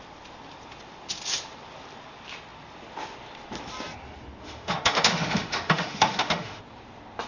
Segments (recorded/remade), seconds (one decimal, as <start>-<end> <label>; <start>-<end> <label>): 0.0-4.4 recorded; 4.4-6.6 remade; 6.6-7.3 recorded